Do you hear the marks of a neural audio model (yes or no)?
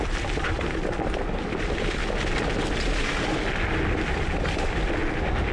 no